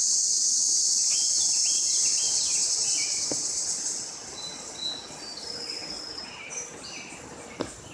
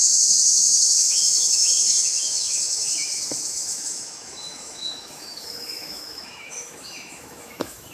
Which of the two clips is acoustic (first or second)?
first